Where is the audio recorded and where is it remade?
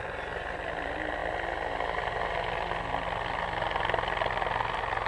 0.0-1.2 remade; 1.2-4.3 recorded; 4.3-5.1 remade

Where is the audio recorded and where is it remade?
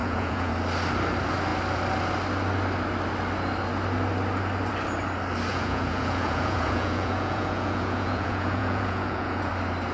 0.0-0.5 remade; 0.5-5.5 recorded; 5.5-9.5 remade; 9.5-9.9 recorded